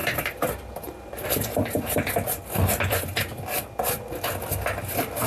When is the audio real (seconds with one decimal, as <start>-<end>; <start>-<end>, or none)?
0.0-5.3